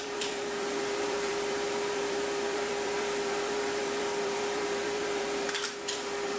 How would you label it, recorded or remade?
remade